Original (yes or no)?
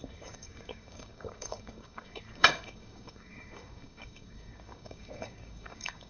no